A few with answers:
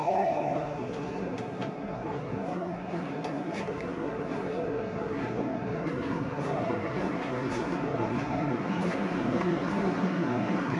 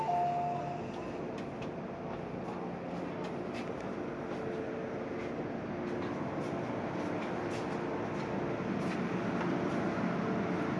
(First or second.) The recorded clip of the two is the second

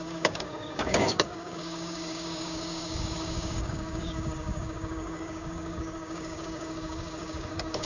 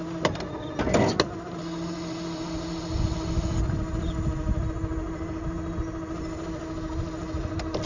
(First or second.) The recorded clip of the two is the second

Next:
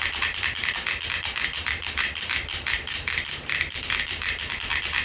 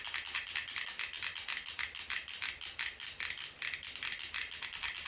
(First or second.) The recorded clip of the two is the second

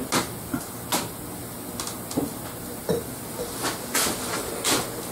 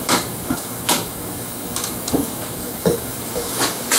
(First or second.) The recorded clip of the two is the first